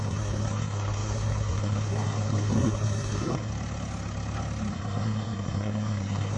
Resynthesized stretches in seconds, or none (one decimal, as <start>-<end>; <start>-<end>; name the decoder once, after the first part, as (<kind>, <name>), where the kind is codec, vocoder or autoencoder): 0.0-3.5 (codec, SNAC); 4.7-6.4